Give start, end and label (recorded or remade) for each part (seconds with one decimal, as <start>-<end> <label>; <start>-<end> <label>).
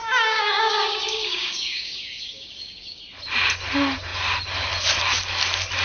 0.0-3.0 remade; 3.0-5.8 recorded